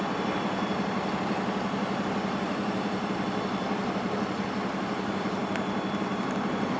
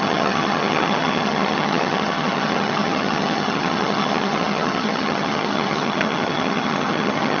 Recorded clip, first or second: first